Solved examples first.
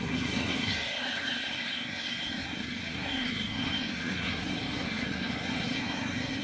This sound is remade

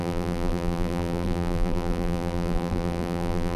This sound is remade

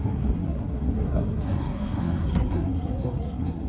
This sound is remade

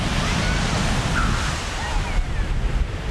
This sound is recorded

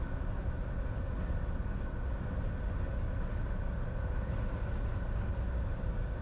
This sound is recorded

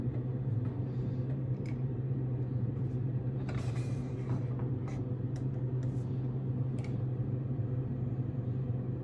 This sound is remade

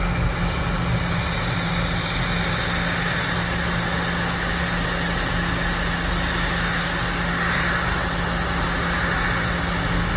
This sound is recorded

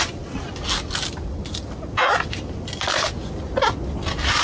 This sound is recorded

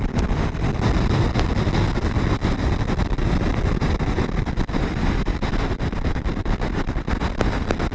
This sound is recorded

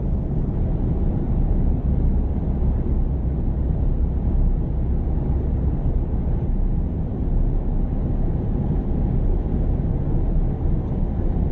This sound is recorded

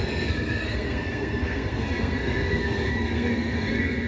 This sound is remade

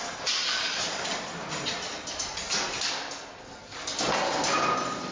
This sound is remade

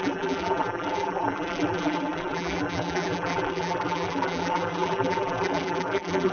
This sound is remade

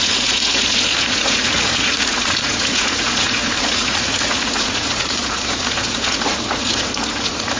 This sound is remade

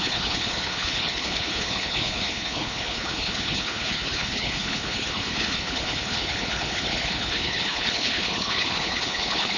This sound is remade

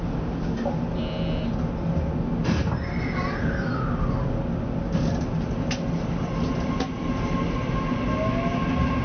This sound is recorded